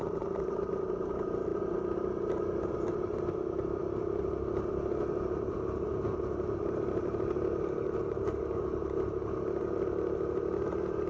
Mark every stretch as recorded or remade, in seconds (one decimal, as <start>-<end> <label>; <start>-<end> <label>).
0.0-3.8 remade; 3.8-5.1 recorded; 5.1-11.1 remade